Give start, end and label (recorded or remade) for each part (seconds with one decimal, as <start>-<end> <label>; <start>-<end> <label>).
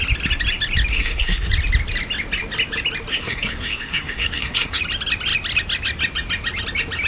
0.0-0.9 recorded; 0.9-1.5 remade; 1.5-3.1 recorded; 3.1-4.8 remade; 4.8-7.1 recorded